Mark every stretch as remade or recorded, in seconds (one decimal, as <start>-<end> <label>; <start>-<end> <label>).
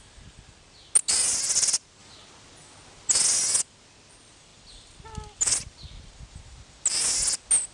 0.0-7.7 recorded